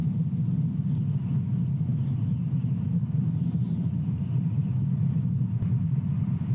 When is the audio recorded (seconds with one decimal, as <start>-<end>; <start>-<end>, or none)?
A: 0.0-1.9; 4.7-6.5